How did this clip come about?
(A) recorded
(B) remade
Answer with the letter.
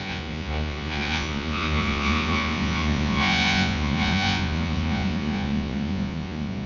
B